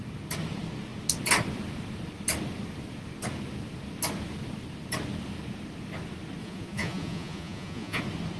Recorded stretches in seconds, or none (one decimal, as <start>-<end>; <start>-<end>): 0.0-6.4; 8.0-8.4